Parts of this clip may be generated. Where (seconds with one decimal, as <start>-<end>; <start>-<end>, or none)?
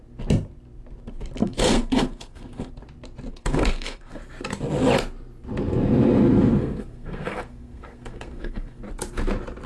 1.4-2.7; 3.3-4.2; 6.6-8.8